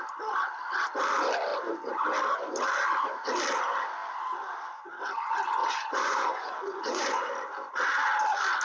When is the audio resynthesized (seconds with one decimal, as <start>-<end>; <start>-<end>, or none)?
5.6-7.3